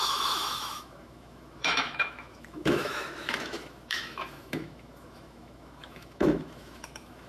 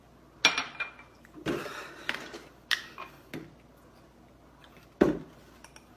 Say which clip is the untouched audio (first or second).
second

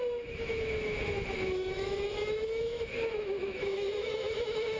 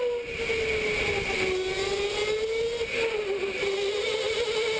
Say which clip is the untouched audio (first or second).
second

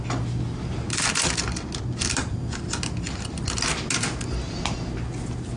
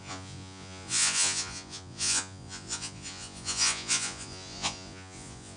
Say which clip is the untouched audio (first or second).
first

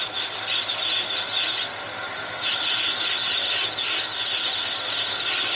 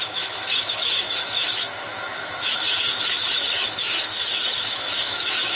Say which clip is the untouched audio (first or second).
first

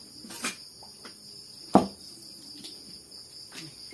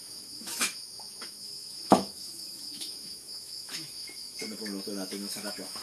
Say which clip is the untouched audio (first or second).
first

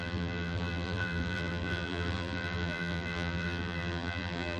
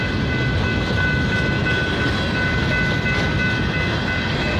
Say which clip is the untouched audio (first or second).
second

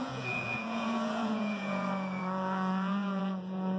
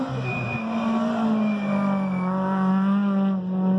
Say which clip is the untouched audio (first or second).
second